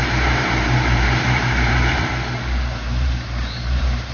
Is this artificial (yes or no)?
yes